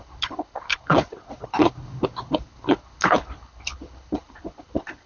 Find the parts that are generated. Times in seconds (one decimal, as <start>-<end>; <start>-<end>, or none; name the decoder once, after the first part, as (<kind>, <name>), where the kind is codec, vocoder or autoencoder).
0.0-5.1 (codec, HILCodec)

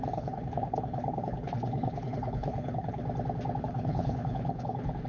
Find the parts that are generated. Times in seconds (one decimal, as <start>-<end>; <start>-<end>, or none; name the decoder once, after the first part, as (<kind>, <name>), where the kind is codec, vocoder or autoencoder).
0.0-3.0 (codec, HILCodec); 3.6-5.1

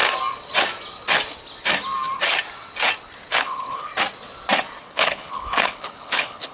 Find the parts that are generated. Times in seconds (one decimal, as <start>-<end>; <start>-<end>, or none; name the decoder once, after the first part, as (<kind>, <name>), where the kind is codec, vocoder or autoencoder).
3.3-3.9 (codec, HILCodec); 4.8-6.5